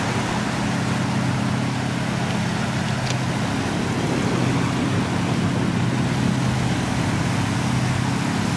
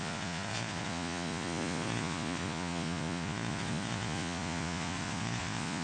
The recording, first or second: first